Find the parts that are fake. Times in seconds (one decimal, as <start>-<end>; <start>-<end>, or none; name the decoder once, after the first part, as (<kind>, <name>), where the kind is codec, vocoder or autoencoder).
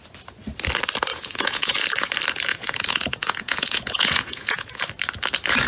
1.1-1.7 (vocoder, Vocos); 2.5-4.8